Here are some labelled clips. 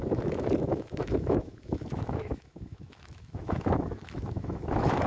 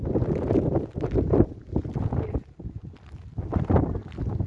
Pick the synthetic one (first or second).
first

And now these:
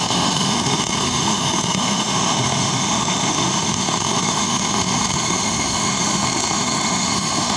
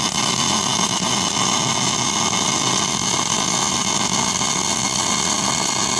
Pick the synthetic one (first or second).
first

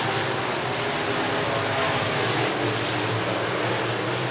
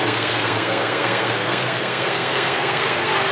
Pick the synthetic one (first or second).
second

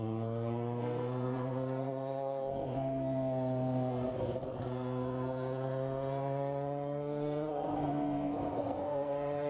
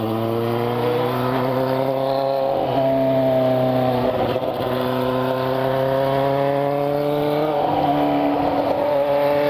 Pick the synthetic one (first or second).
first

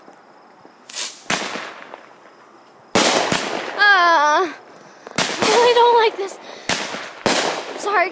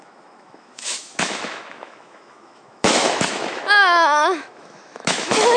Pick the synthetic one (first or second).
second